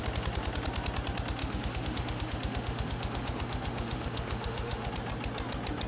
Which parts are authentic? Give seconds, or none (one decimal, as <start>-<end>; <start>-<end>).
0.0-1.4; 4.9-5.9